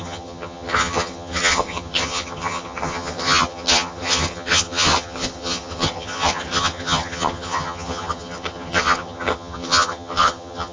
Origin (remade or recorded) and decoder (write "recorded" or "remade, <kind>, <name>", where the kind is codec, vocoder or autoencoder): remade, vocoder, HiFi-GAN